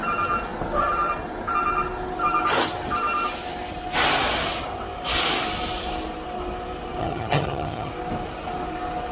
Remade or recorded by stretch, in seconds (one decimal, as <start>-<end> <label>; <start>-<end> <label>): 0.0-7.0 recorded; 7.0-7.9 remade; 7.9-9.1 recorded